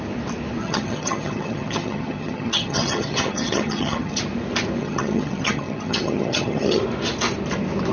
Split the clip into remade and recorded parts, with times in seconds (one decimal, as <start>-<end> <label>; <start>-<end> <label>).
0.0-0.6 recorded; 0.6-4.2 remade; 4.2-4.8 recorded; 4.8-6.8 remade; 6.8-7.9 recorded